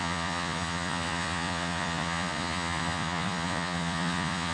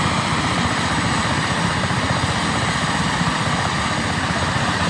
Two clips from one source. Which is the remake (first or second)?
first